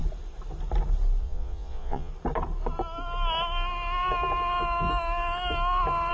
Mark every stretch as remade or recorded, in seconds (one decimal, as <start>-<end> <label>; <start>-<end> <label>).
0.0-1.2 recorded; 1.2-2.1 remade; 2.1-6.1 recorded

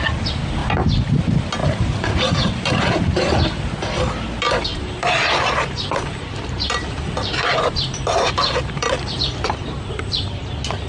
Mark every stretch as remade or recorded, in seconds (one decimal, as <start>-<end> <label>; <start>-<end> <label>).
0.0-1.6 recorded; 1.6-3.0 remade; 3.0-4.7 recorded; 4.7-9.8 remade; 9.8-10.9 recorded

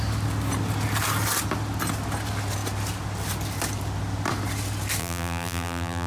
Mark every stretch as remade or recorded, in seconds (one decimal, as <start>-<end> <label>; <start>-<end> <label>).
0.0-5.0 recorded; 5.0-6.1 remade